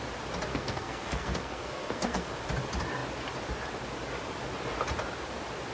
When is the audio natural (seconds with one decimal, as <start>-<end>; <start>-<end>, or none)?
0.0-0.5; 2.4-5.7